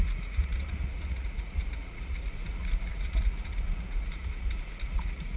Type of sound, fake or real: fake